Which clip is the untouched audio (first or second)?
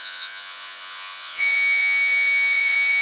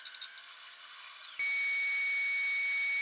second